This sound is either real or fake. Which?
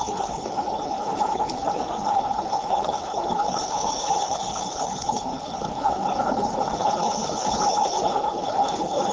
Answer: fake